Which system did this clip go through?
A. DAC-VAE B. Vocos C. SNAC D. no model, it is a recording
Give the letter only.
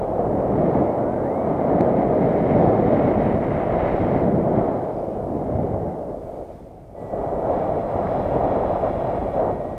D